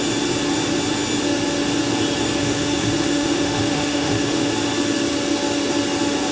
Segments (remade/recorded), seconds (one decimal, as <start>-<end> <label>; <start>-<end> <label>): 0.0-2.4 recorded; 2.4-4.5 remade; 4.5-6.3 recorded